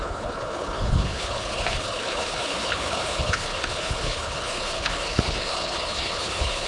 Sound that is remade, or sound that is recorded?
remade